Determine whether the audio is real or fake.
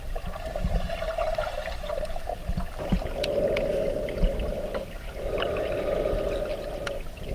real